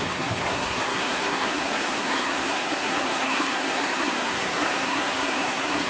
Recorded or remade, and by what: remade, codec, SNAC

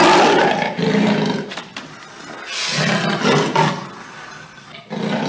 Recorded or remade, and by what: recorded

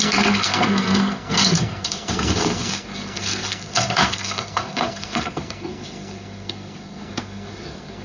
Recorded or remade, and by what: remade, codec, SNAC